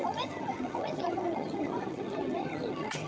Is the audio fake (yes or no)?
yes